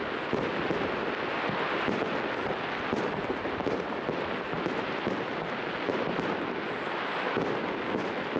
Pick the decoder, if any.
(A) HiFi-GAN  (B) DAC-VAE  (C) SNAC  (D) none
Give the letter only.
D